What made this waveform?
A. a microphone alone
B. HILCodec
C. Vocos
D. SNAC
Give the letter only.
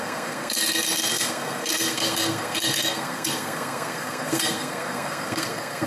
D